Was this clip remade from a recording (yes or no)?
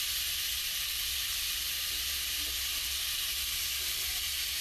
no